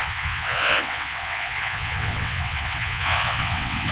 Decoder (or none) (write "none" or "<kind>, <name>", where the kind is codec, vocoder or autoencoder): vocoder, WaveNeXt